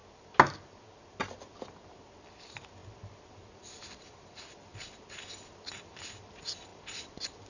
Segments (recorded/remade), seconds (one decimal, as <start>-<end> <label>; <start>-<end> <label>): 0.0-2.8 recorded; 2.8-3.3 remade; 3.3-6.7 recorded; 6.7-7.5 remade

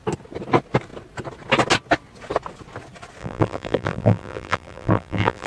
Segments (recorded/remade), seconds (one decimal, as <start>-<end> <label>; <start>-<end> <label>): 0.0-3.2 recorded; 3.2-5.5 remade

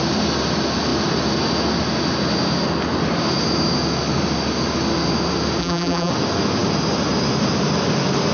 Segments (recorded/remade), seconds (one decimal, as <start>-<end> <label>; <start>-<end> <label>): 0.0-5.6 recorded; 5.6-6.1 remade; 6.1-8.3 recorded

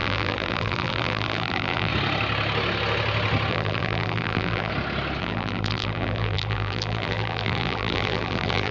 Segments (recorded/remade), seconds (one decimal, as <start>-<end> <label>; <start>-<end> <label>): 0.0-1.9 remade; 1.9-3.5 recorded; 3.5-4.7 remade; 4.7-5.2 recorded; 5.2-8.7 remade

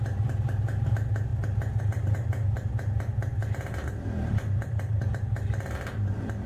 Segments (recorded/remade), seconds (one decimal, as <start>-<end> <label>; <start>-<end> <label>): 0.0-1.3 remade; 1.3-1.8 recorded; 1.8-3.3 remade; 3.3-3.8 recorded; 3.8-6.5 remade